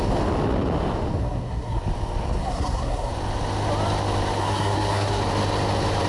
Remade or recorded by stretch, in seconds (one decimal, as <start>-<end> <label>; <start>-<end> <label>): 0.0-1.2 recorded; 1.2-1.8 remade; 1.8-2.4 recorded; 2.4-3.1 remade; 3.1-4.4 recorded; 4.4-5.2 remade; 5.2-6.1 recorded